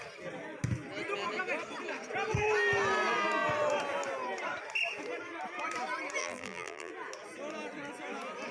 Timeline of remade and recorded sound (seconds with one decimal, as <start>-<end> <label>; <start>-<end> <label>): 0.0-6.2 recorded; 6.2-6.9 remade; 6.9-8.5 recorded